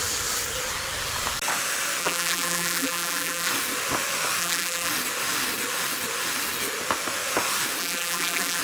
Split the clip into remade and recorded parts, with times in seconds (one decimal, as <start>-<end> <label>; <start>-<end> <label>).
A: 0.0-2.0 recorded; 2.0-3.5 remade; 3.5-4.4 recorded; 4.4-4.9 remade; 4.9-7.8 recorded; 7.8-8.6 remade